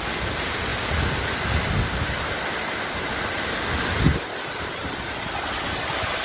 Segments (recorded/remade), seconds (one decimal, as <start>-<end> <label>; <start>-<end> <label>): 0.0-6.2 recorded